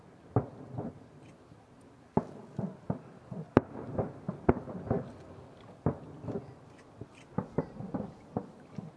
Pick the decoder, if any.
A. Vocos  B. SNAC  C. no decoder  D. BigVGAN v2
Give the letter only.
C